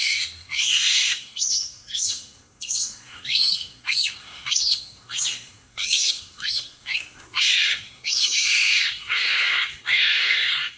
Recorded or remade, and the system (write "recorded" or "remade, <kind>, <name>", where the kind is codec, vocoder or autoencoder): remade, codec, SNAC